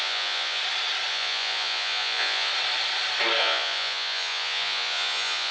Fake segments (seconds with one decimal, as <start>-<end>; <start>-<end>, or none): 0.0-0.6; 1.1-2.5; 3.4-5.5